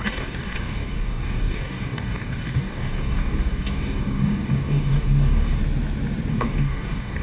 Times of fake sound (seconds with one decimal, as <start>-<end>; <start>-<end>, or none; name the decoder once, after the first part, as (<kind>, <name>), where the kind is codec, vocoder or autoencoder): 0.0-5.6 (codec, DAC); 6.3-7.2